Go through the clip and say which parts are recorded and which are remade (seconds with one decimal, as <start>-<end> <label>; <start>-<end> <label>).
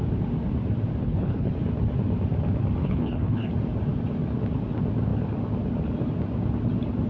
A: 0.0-1.0 recorded; 1.0-1.5 remade; 1.5-2.8 recorded; 2.8-3.5 remade; 3.5-7.1 recorded